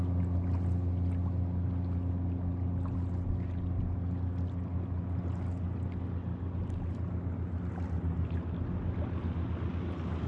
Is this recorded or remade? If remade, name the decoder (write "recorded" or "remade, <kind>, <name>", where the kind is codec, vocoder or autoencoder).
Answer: recorded